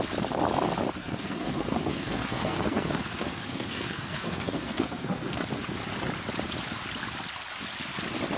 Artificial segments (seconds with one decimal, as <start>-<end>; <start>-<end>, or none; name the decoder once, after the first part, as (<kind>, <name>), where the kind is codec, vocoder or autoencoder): 1.0-5.4 (codec, SNAC)